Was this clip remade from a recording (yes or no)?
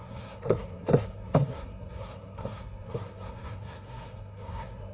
yes